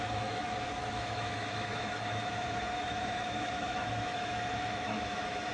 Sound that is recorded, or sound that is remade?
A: remade